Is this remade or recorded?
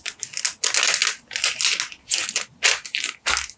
recorded